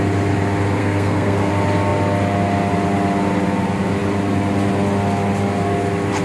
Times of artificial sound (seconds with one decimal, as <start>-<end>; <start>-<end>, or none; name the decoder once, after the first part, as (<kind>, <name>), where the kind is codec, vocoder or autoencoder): 0.8-1.5 (codec, SNAC)